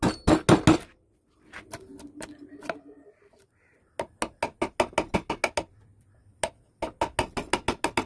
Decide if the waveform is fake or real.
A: real